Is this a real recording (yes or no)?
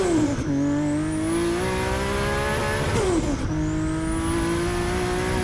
yes